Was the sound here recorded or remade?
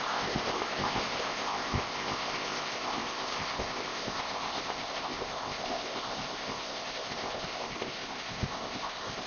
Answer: remade